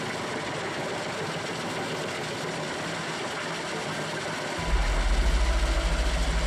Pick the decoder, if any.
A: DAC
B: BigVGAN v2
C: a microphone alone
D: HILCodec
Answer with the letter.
C